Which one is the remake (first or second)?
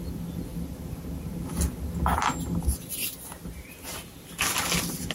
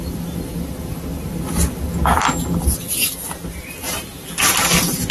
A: second